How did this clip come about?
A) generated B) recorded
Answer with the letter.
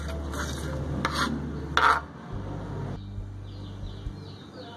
B